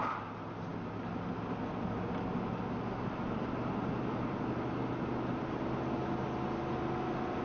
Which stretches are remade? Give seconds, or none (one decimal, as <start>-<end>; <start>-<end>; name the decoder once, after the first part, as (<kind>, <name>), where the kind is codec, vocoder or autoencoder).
none